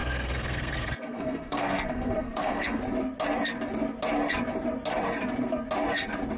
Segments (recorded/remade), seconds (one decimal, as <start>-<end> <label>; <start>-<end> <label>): 0.0-2.8 remade; 2.8-6.4 recorded

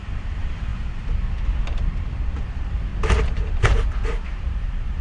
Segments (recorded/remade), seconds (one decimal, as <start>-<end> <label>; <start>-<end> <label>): 0.0-0.7 remade; 0.7-2.3 recorded; 2.3-2.9 remade; 2.9-3.6 recorded; 3.6-5.0 remade

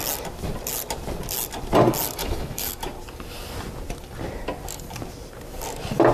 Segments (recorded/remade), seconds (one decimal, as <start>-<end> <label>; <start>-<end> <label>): 0.0-2.2 recorded; 2.2-2.7 remade; 2.7-6.1 recorded

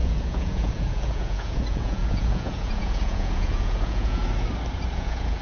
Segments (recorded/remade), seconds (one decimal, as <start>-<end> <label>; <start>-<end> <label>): 0.0-4.2 remade; 4.2-4.9 recorded; 4.9-5.4 remade